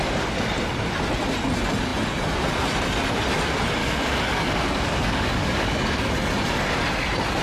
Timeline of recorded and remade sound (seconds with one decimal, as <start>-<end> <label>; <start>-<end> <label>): 0.0-3.8 recorded; 3.8-6.1 remade; 6.1-7.4 recorded